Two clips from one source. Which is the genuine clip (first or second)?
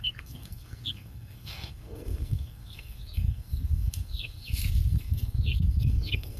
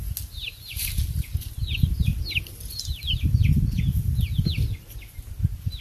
second